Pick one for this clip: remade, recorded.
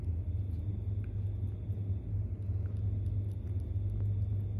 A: recorded